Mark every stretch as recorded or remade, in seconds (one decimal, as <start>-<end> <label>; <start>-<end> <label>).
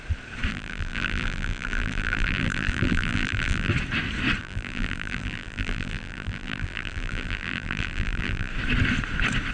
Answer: 0.0-0.5 recorded; 0.5-3.7 remade; 3.7-4.4 recorded; 4.4-8.5 remade; 8.5-9.5 recorded